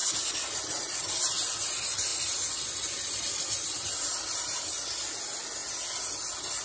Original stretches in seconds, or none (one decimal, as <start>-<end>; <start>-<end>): 0.0-2.1; 4.2-5.6; 6.1-6.6